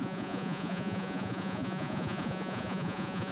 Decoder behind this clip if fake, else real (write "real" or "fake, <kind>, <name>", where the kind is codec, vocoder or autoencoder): fake, vocoder, Vocos